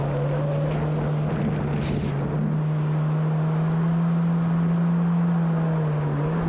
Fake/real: real